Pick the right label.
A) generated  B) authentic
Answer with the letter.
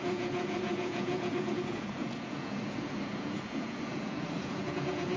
A